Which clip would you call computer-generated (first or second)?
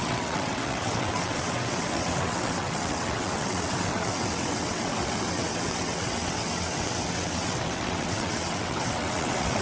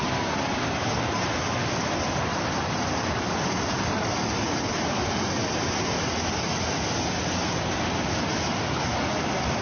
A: first